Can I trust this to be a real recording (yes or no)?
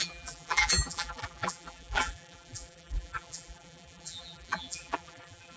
no